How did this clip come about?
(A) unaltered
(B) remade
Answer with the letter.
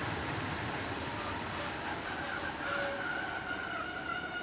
A